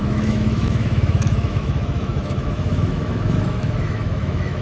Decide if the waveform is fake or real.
fake